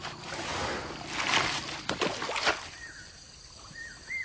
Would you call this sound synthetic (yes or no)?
no